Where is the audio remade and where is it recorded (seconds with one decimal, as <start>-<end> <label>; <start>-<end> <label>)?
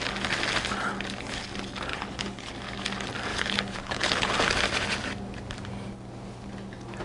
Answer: 0.0-1.9 recorded; 1.9-2.5 remade; 2.5-3.3 recorded; 3.3-4.3 remade; 4.3-7.0 recorded